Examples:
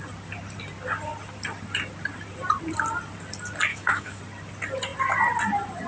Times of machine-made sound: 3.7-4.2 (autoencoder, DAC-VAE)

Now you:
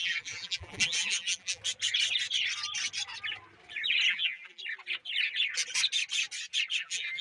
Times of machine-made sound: 0.0-1.6 (vocoder, BigVGAN v2); 4.1-4.6; 6.8-7.2

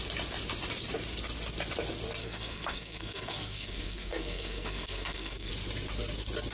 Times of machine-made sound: 2.2-5.5 (codec, SNAC)